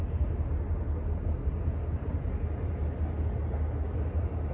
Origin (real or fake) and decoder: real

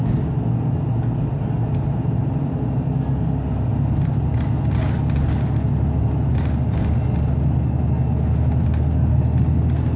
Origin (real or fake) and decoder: real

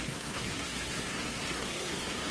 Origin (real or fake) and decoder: fake, codec, SNAC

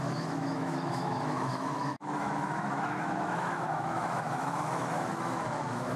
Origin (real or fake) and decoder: fake, autoencoder, DAC-VAE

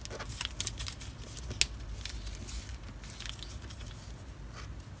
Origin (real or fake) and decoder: real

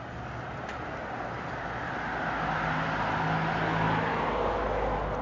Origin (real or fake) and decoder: real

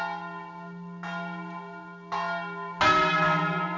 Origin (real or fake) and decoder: real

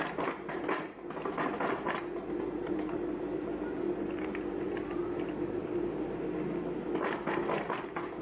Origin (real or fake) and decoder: real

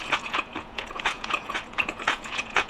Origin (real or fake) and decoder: fake, vocoder, Vocos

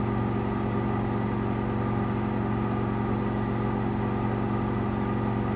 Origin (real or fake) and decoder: real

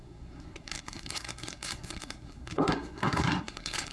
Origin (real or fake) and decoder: fake, codec, SNAC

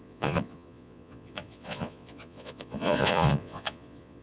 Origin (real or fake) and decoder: fake, vocoder, Vocos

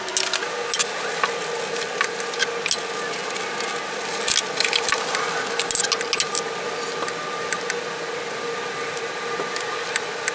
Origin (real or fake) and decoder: real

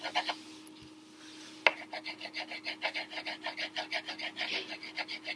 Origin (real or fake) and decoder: real